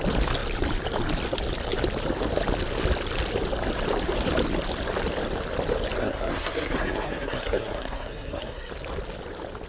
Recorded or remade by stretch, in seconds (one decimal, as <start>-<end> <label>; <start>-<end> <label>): 0.0-6.0 recorded; 6.0-8.7 remade; 8.7-9.7 recorded